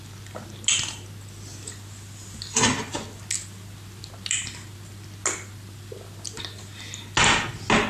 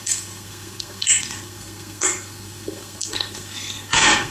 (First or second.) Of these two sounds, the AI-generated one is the second